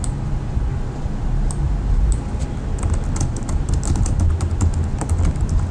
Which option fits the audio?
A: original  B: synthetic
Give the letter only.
A